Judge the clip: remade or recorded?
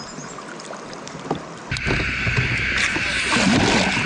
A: recorded